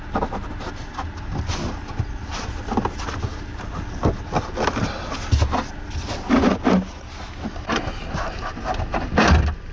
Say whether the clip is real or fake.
real